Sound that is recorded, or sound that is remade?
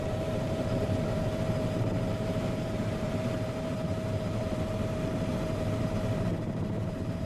remade